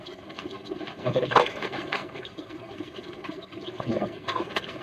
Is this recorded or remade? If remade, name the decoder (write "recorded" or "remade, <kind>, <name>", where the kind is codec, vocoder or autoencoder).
remade, codec, SNAC